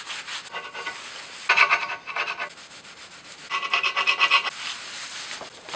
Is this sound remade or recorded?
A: recorded